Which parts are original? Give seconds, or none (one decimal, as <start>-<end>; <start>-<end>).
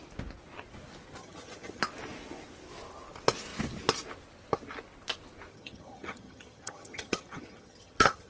0.0-1.2; 1.8-5.5